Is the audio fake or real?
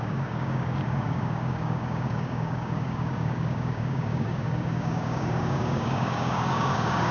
fake